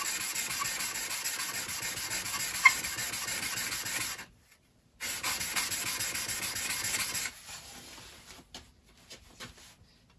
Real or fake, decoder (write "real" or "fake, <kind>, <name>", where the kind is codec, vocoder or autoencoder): real